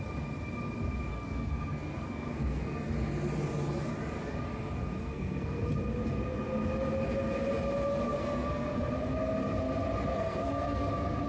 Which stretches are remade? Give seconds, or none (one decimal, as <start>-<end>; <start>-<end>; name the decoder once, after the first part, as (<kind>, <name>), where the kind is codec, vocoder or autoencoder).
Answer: 1.1-2.9 (codec, SNAC); 5.0-5.6; 8.2-8.9; 10.1-10.9